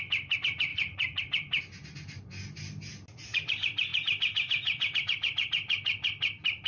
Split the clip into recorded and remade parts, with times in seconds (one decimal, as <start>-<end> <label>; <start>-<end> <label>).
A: 0.0-0.7 recorded; 0.7-1.2 remade; 1.2-6.7 recorded